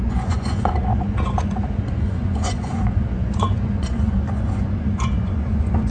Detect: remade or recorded remade